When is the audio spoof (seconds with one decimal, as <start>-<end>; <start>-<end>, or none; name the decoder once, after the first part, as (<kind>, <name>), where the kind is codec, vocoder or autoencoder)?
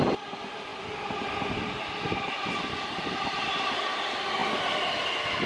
none